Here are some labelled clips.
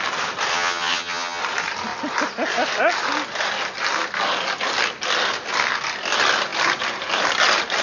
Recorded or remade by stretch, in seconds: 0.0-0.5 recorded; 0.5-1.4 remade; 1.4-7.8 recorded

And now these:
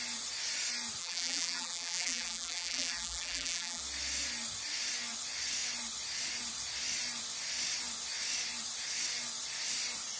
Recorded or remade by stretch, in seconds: 0.0-1.0 recorded; 1.0-3.8 remade; 3.8-10.2 recorded

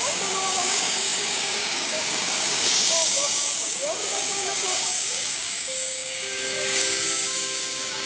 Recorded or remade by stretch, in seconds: 0.0-8.1 remade

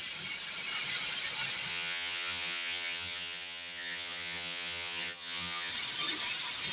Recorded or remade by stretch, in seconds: 0.0-1.7 recorded; 1.7-5.7 remade; 5.7-6.7 recorded

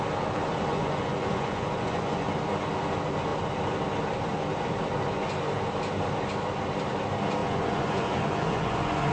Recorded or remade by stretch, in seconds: 0.0-0.7 recorded; 0.7-2.3 remade; 2.3-7.4 recorded; 7.4-9.1 remade

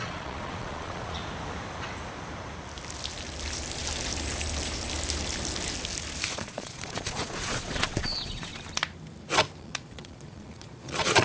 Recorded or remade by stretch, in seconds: 0.0-1.2 remade; 1.2-6.3 recorded; 6.3-8.5 remade; 8.5-9.6 recorded; 9.6-11.2 remade